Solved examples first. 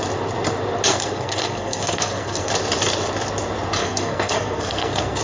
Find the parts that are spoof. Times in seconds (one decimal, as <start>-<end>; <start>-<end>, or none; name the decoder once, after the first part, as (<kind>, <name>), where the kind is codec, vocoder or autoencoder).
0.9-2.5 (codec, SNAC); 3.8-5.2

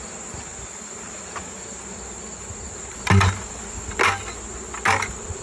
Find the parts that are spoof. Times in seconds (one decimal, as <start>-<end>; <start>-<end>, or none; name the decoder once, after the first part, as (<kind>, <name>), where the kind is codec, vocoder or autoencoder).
none

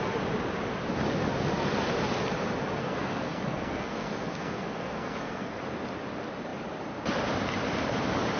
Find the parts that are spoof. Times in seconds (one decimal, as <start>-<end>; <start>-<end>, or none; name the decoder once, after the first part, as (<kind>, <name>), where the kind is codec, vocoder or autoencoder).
2.8-5.6 (codec, SNAC)

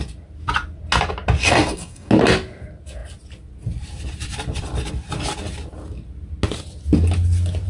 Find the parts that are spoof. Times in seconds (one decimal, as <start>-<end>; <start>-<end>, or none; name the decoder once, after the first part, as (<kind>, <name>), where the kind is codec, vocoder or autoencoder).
1.4-2.1 (codec, DAC)

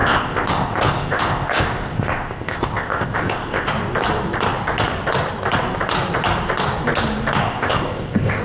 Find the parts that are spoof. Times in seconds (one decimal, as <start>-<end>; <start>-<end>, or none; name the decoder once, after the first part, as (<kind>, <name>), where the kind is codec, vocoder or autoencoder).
0.0-3.7 (codec, ZipCodec); 7.4-8.4

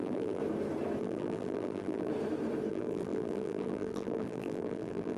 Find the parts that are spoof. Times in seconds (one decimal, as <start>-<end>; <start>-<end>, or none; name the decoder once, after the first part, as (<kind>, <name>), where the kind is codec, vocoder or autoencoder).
0.0-0.4 (vocoder, BigVGAN v2); 1.0-2.1; 2.7-5.2

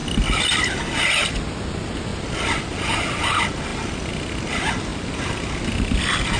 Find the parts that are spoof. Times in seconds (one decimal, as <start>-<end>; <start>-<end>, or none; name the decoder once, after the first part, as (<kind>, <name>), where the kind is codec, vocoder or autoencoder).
none